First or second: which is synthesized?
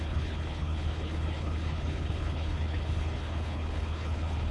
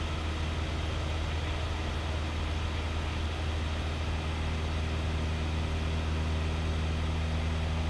first